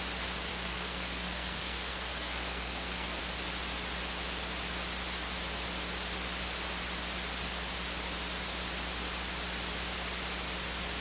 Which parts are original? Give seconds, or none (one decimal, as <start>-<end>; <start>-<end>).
0.0-0.5; 3.2-11.0